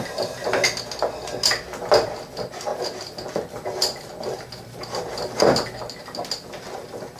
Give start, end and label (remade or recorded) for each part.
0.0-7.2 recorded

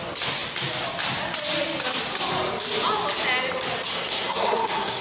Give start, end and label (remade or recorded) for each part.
0.0-3.9 recorded; 3.9-5.0 remade

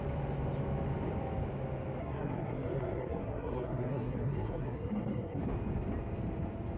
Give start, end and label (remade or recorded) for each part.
0.0-2.0 recorded; 2.0-5.4 remade; 5.4-6.8 recorded

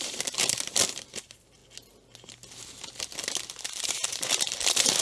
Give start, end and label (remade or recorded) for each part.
0.0-1.6 remade; 1.6-3.8 recorded; 3.8-5.0 remade